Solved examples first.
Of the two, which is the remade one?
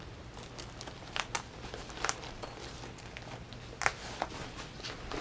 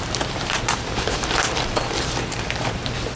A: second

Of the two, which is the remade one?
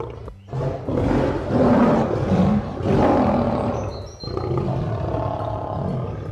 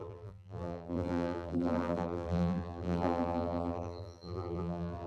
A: second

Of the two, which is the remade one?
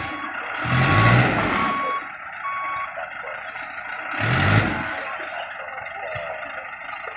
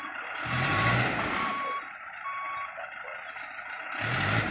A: second